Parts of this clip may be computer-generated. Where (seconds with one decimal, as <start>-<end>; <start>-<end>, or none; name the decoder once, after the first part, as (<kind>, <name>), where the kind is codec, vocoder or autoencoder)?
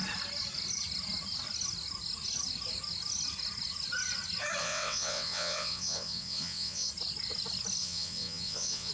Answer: 4.6-6.9 (vocoder, WaveNeXt); 7.8-8.9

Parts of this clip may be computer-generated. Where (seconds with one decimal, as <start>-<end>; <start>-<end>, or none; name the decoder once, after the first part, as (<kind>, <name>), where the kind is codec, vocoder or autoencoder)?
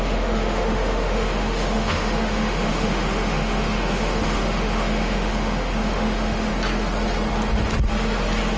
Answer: 0.0-6.5 (autoencoder, DAC-VAE)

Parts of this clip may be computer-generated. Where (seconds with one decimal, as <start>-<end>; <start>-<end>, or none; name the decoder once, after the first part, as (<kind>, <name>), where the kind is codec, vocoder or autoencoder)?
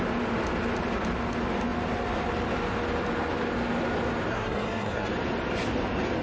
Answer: 4.3-5.1 (codec, SNAC)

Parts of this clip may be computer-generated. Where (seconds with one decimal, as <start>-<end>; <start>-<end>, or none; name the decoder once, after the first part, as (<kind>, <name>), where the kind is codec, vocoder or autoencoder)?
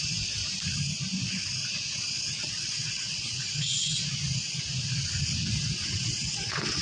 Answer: 0.0-0.4 (vocoder, WaveNeXt); 2.3-4.0; 5.5-6.8